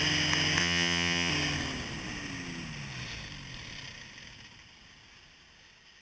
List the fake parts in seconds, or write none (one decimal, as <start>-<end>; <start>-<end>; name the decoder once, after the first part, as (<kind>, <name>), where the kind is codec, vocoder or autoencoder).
0.6-1.3 (vocoder, HiFi-GAN)